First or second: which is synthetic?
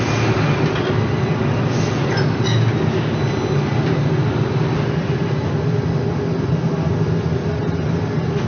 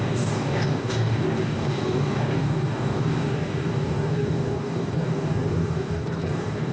second